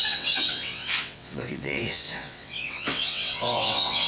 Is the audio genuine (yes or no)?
no